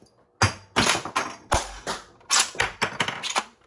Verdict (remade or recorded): recorded